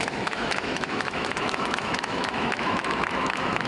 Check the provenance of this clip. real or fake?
fake